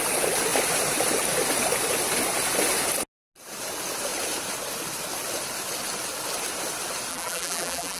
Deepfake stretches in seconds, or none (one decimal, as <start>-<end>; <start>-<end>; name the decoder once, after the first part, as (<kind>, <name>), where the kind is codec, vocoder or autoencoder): 7.1-8.0 (vocoder, BigVGAN v2)